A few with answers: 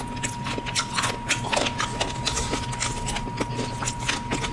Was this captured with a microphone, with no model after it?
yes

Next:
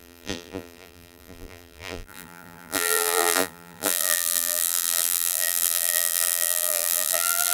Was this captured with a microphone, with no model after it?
no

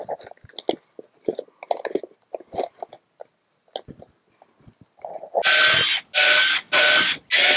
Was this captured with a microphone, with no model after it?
yes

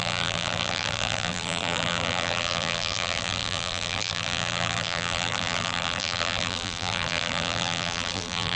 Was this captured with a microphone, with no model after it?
no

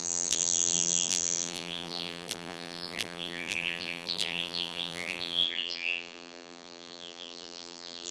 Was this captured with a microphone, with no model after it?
no